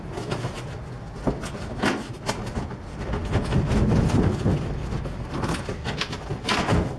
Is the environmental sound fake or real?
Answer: real